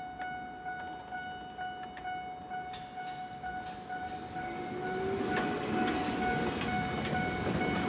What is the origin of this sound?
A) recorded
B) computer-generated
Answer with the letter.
A